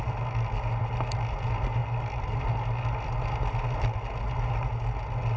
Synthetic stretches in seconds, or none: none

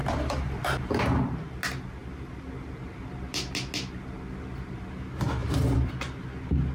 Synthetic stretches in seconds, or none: 0.0-1.0; 5.4-5.9

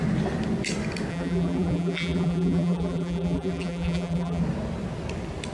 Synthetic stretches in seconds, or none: 1.1-4.4

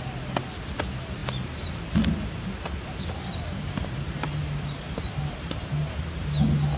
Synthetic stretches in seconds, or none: 1.2-1.7; 4.4-6.2

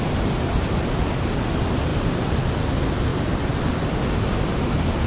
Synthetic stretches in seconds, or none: 0.5-1.0; 1.9-2.4

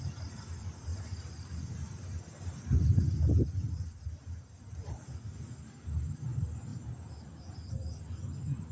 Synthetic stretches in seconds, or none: none

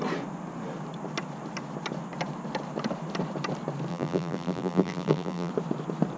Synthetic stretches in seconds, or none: 3.9-5.5